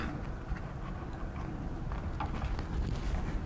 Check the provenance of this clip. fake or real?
real